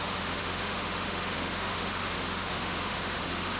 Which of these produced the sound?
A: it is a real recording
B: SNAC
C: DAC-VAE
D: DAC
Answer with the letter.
C